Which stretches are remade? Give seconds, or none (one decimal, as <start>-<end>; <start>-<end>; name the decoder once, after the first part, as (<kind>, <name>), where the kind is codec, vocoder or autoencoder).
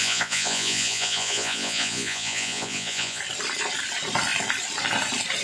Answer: 0.0-3.2 (vocoder, Vocos)